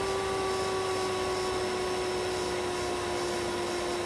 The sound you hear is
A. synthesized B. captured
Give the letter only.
B